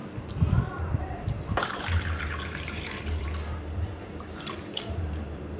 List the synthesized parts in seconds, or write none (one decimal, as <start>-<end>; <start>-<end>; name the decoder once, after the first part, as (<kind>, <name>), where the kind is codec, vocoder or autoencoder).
1.0-5.6 (vocoder, BigVGAN v2)

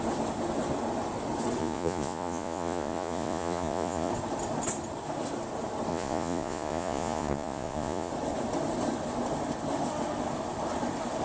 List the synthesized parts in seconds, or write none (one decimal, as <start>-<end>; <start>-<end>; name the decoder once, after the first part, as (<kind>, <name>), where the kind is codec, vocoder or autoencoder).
1.6-4.1 (vocoder, Vocos); 5.9-8.1

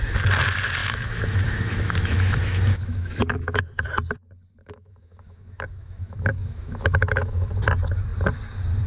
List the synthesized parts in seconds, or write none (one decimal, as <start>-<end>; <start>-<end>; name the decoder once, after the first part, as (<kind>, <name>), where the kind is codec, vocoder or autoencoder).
0.8-3.6 (autoencoder, DAC-VAE); 4.6-7.5

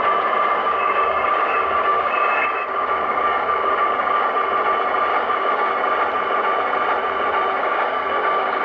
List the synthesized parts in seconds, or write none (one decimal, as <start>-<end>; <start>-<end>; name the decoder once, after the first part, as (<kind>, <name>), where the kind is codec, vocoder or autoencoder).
0.6-4.3 (codec, DAC); 5.1-5.7; 7.6-8.6

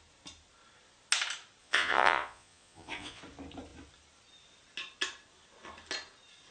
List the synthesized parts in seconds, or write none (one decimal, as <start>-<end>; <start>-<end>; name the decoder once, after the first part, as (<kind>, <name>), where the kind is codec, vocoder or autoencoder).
1.6-3.2 (vocoder, Vocos)